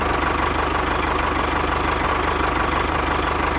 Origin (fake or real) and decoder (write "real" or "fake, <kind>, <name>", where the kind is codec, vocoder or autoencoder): real